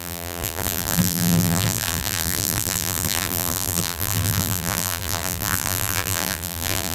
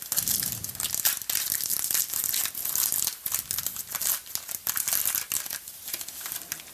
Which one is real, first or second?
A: second